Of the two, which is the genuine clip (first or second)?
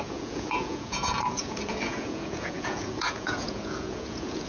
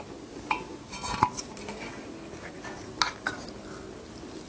second